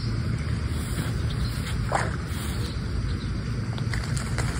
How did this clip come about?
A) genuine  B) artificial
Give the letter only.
A